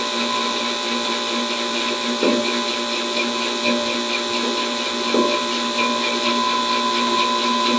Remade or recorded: recorded